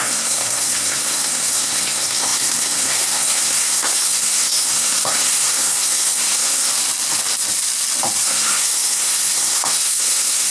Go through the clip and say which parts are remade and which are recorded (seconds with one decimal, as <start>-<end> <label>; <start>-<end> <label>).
0.0-6.7 remade; 6.7-8.2 recorded; 8.2-10.5 remade